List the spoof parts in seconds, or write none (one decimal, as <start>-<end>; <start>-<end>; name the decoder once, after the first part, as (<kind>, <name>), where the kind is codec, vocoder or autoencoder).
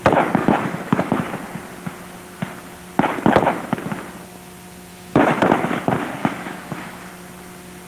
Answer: 0.4-1.1 (autoencoder, DAC-VAE); 4.9-5.5; 6.2-7.1